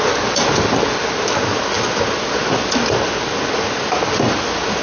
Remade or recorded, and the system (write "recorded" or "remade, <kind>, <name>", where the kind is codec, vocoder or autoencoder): recorded